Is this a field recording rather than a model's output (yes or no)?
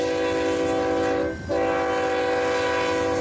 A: yes